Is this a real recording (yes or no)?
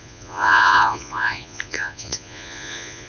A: no